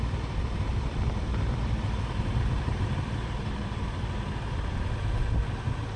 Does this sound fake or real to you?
fake